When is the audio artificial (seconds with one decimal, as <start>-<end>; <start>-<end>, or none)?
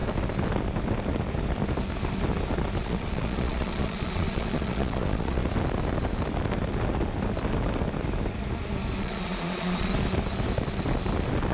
2.8-5.4; 9.0-9.9